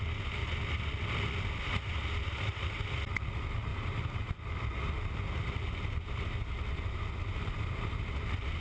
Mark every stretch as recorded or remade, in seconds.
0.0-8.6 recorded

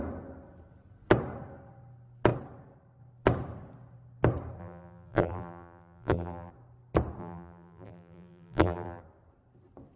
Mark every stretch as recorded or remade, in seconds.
0.0-4.6 recorded; 4.6-6.5 remade; 6.5-7.2 recorded; 7.2-9.0 remade; 9.0-10.0 recorded

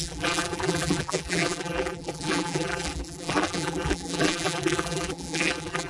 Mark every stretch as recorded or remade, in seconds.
0.0-5.9 remade

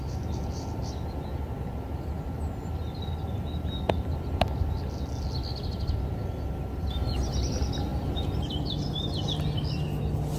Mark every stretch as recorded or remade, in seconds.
0.0-10.4 recorded

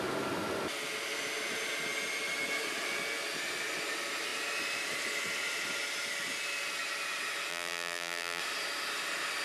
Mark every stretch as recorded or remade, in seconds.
0.0-7.5 recorded; 7.5-8.4 remade; 8.4-9.4 recorded

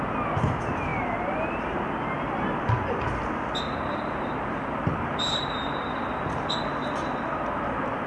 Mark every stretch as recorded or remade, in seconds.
0.0-3.7 recorded; 3.7-6.5 remade; 6.5-8.1 recorded

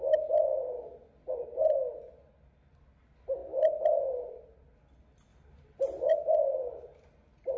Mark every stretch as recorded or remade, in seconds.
0.0-7.6 recorded

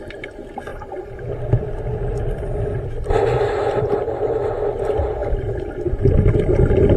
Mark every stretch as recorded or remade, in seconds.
0.0-7.0 recorded